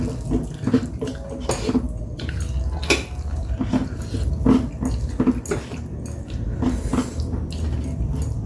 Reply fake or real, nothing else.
real